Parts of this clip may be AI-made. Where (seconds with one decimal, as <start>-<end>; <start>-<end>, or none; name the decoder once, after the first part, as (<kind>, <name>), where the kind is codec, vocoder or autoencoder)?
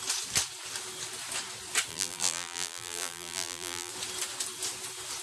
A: 1.9-3.9 (vocoder, BigVGAN v2)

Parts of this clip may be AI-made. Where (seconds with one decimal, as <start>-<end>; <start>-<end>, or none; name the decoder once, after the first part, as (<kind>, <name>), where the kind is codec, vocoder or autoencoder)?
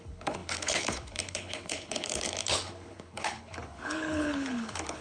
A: 0.0-5.0 (codec, HILCodec)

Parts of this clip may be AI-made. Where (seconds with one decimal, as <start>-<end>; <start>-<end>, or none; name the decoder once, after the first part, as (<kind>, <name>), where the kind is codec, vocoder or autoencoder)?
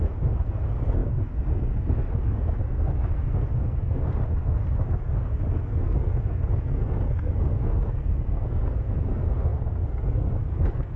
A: 0.0-11.0 (codec, SNAC)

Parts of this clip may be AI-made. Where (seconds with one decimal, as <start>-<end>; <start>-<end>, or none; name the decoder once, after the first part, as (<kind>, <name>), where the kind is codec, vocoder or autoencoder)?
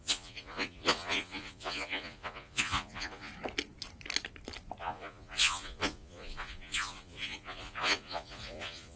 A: 0.0-3.3 (vocoder, Vocos); 4.8-9.0